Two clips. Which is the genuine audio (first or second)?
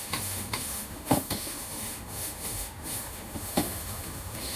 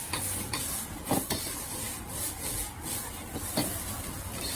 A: second